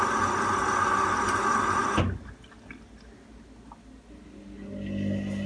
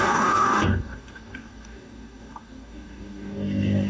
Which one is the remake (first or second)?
second